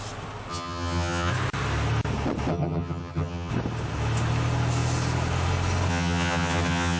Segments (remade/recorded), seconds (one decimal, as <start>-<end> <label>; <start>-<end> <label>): 0.0-0.5 recorded; 0.5-1.3 remade; 1.3-2.5 recorded; 2.5-3.5 remade; 3.5-5.9 recorded; 5.9-7.0 remade